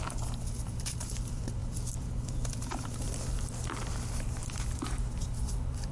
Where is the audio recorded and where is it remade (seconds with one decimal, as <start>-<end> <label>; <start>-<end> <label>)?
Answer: 0.0-5.9 remade